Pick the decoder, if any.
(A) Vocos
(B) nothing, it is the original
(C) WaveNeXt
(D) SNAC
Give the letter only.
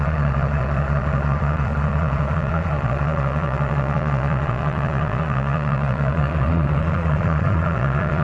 A